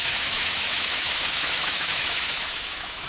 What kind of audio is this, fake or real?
fake